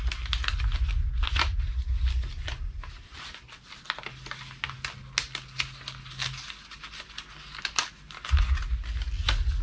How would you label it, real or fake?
real